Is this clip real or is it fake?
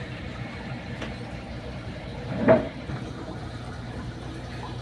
fake